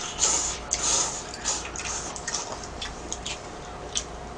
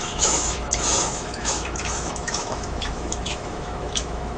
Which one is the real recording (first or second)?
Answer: first